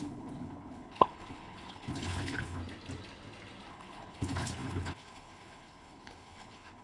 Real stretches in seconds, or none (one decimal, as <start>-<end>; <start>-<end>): 2.6-3.7